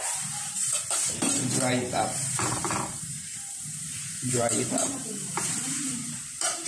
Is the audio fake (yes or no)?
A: yes